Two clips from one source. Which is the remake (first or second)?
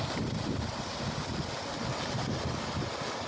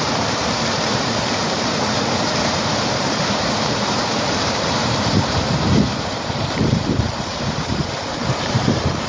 second